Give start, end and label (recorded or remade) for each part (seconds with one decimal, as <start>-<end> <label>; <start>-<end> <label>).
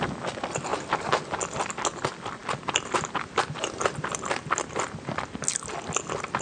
0.0-6.4 recorded